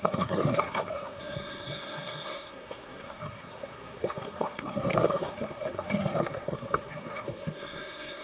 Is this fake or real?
fake